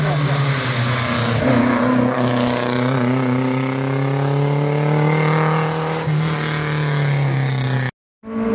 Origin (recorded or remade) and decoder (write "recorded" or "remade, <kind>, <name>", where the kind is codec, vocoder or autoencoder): recorded